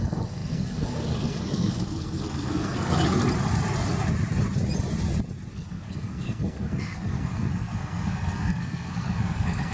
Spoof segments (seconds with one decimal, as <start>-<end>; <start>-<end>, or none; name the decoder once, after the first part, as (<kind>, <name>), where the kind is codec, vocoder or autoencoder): 0.0-3.2 (codec, SNAC); 5.5-9.7